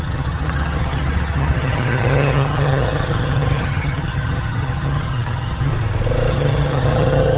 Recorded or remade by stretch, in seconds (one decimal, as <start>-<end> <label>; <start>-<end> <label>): 0.0-5.7 remade; 5.7-6.3 recorded; 6.3-7.4 remade